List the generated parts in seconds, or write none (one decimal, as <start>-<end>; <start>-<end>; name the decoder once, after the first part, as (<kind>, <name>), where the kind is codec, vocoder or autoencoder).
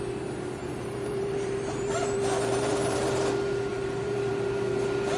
0.6-3.2 (vocoder, BigVGAN v2); 3.7-4.3